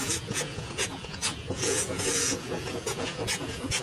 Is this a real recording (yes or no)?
no